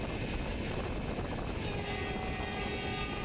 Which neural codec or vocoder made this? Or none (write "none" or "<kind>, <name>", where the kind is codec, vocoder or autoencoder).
none